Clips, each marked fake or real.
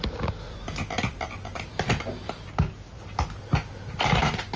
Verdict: real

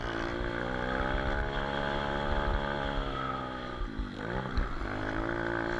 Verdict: real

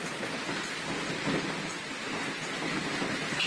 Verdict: real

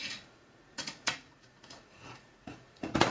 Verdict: fake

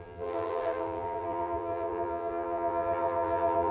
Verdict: fake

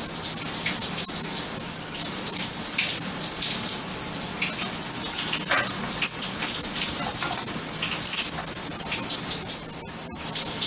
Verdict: real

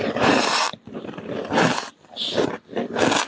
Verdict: real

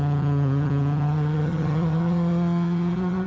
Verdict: fake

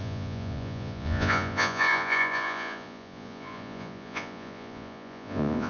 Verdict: fake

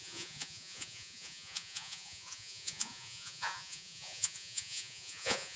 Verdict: fake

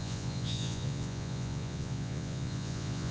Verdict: fake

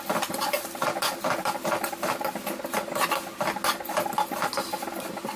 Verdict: real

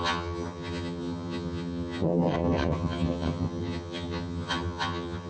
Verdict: fake